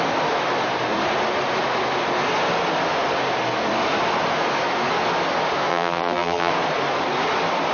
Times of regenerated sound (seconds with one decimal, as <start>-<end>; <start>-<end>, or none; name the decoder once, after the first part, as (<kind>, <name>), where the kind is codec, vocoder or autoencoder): 5.7-6.5 (vocoder, BigVGAN v2)